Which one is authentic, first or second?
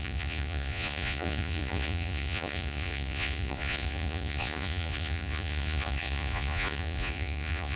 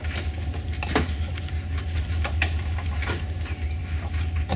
second